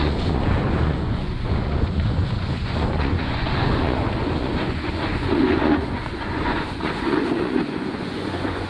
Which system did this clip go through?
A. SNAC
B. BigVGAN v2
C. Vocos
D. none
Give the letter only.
C